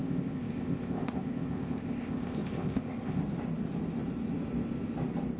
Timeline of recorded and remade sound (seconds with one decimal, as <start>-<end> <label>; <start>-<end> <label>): 0.0-3.2 remade; 3.2-5.4 recorded